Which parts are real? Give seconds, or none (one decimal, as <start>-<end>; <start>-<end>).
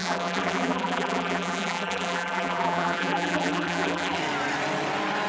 4.2-5.3